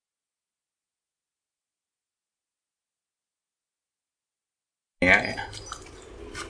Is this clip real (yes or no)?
yes